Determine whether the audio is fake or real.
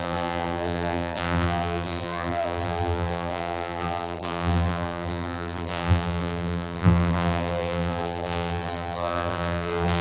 fake